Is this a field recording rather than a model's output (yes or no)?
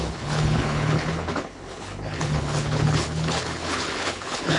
no